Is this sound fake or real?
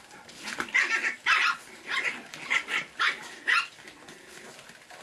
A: real